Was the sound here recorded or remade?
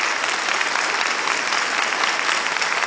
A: recorded